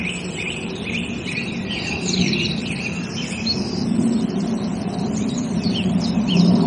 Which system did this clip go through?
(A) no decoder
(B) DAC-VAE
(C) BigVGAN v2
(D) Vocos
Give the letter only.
C